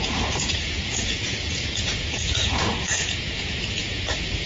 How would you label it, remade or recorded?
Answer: remade